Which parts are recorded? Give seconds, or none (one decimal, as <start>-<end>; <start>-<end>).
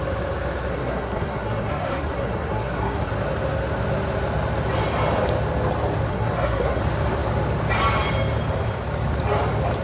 0.0-0.7; 3.1-6.1; 6.8-9.8